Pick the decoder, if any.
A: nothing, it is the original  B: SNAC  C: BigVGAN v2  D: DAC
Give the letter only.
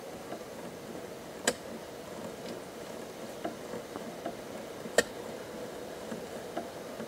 A